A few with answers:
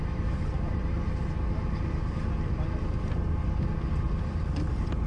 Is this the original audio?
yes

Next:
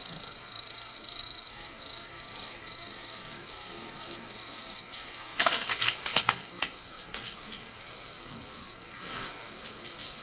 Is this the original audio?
no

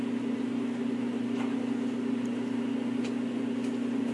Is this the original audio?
yes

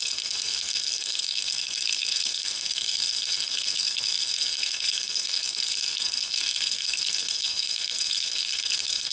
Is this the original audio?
no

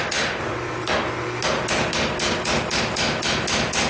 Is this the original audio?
yes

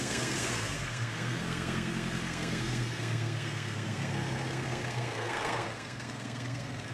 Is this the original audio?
no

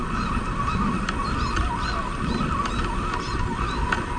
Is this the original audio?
yes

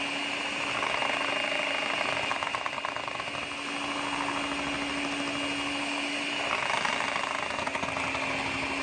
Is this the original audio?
yes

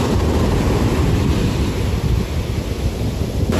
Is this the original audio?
yes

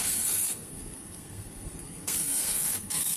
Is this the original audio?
no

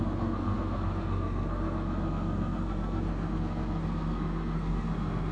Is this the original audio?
no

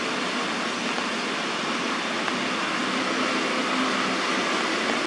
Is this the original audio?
yes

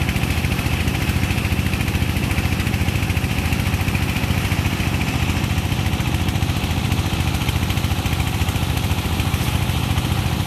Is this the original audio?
yes